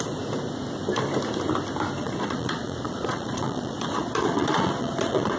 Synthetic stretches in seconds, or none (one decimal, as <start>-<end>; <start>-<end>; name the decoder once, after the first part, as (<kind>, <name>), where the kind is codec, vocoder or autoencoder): 2.0-5.4 (vocoder, Vocos)